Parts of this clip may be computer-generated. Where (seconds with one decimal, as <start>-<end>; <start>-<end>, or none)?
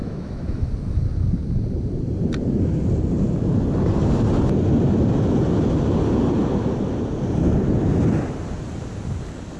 0.0-0.7